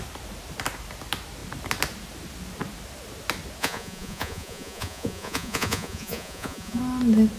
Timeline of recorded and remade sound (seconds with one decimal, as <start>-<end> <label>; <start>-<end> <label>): 0.0-3.6 recorded; 3.6-6.8 remade; 6.8-7.4 recorded